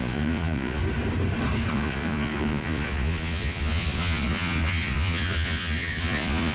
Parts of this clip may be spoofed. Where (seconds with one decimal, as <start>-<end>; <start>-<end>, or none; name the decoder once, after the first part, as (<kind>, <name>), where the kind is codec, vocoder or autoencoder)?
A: 0.0-0.8 (vocoder, Vocos); 1.7-6.5